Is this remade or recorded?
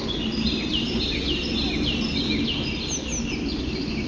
recorded